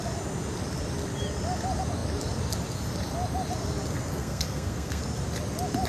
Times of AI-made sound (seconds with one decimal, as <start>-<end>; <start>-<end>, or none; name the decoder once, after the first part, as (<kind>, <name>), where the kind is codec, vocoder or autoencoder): 4.1-5.0 (codec, SNAC)